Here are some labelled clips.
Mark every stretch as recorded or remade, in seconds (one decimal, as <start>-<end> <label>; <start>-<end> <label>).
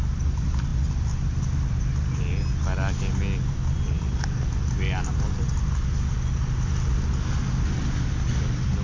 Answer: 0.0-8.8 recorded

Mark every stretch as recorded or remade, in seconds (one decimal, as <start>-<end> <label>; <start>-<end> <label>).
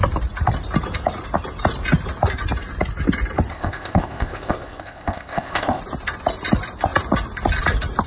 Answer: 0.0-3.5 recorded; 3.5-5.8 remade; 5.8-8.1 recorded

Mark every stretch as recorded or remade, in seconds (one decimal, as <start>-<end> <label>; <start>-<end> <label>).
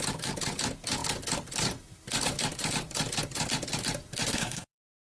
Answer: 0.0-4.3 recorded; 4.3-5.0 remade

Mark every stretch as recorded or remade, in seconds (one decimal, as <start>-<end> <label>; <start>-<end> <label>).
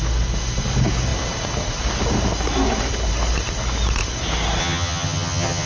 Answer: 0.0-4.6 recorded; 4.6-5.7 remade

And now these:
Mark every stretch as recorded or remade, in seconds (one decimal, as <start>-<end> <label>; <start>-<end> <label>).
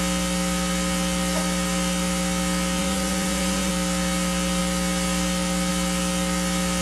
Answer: 0.0-2.8 recorded; 2.8-3.7 remade; 3.7-6.8 recorded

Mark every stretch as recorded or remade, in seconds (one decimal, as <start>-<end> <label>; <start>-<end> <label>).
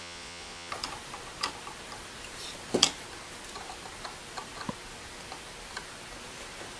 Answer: 0.0-0.7 remade; 0.7-6.8 recorded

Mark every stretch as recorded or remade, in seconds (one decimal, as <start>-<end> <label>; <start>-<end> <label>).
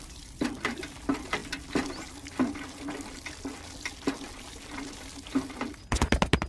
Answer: 0.0-6.5 recorded